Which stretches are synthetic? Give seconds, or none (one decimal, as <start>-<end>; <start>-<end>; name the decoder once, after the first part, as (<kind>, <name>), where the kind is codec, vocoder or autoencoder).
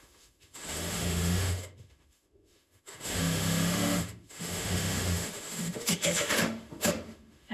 0.0-7.5 (autoencoder, DAC-VAE)